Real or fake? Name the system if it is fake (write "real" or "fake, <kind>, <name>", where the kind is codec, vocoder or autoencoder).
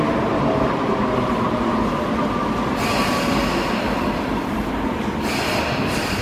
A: real